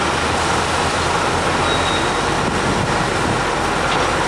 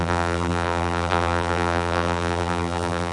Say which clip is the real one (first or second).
first